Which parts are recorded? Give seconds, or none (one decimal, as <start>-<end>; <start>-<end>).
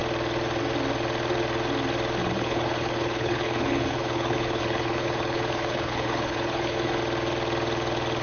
0.0-2.2; 7.0-8.2